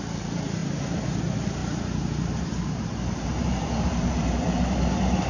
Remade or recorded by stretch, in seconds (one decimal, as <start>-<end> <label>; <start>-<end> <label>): 0.0-1.6 recorded; 1.6-4.8 remade; 4.8-5.3 recorded